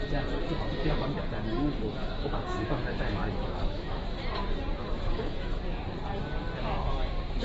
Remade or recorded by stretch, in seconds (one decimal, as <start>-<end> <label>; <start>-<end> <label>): 0.0-1.9 recorded; 1.9-4.2 remade; 4.2-4.8 recorded; 4.8-5.6 remade; 5.6-7.4 recorded